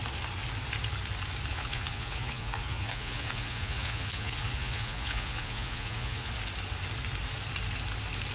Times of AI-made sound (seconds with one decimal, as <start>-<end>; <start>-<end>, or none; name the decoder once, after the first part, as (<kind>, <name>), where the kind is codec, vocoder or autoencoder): 1.5-6.3 (vocoder, Vocos)

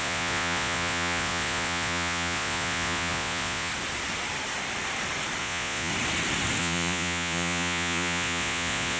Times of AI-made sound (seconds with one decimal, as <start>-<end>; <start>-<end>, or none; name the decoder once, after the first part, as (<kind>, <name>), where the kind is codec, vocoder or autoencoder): 0.0-3.7 (vocoder, Vocos); 5.4-5.9; 6.6-9.0